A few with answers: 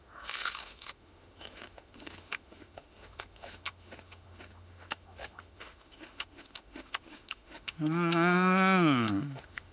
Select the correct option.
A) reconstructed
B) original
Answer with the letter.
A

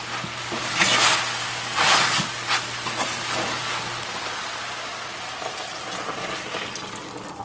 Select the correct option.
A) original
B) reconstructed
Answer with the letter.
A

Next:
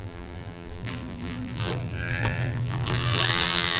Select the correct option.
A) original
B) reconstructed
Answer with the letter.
B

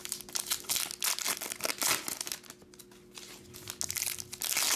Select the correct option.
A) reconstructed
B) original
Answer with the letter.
B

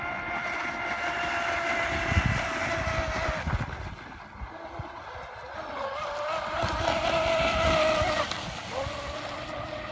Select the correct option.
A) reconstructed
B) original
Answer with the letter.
B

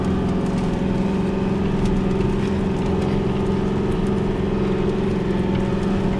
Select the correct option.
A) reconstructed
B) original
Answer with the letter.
B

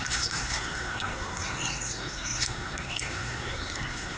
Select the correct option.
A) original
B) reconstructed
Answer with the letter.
B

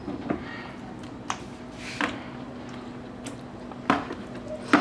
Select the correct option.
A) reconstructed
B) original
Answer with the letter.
B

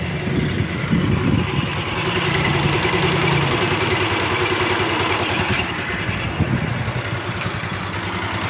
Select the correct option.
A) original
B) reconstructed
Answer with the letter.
A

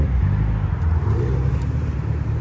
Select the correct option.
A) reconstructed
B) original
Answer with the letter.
B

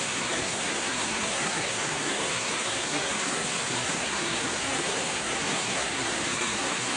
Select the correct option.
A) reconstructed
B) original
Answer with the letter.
A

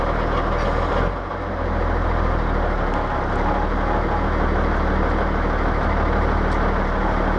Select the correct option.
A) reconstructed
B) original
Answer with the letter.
B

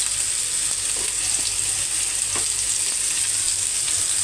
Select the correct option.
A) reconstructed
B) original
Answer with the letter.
B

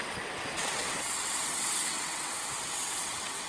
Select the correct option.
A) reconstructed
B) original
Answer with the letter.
A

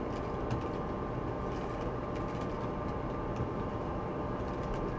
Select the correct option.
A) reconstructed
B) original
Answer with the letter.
B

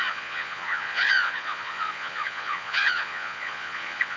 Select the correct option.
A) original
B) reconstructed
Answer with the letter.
B